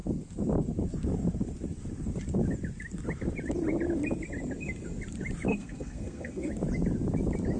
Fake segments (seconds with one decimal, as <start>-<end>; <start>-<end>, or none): 5.5-6.5

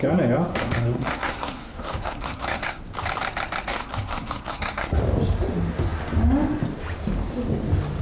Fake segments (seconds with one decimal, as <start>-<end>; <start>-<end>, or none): 0.5-2.8; 3.7-5.0

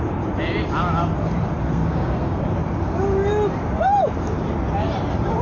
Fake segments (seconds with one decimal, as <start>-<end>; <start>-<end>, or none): 1.6-2.4

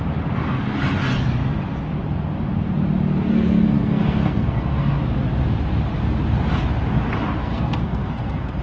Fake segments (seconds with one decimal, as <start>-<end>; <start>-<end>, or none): 3.3-5.0; 7.4-8.6